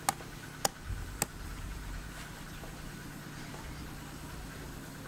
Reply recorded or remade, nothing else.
recorded